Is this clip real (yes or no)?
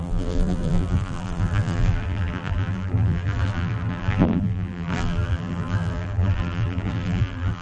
no